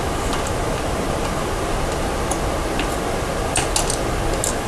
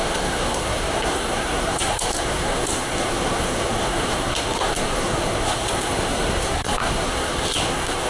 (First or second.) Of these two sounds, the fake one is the second